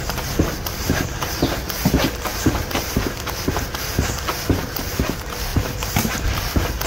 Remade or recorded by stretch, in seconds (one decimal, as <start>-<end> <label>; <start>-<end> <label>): 0.0-5.5 recorded; 5.5-6.4 remade; 6.4-6.9 recorded